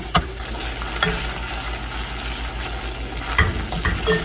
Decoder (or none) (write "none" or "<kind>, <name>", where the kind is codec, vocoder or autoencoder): none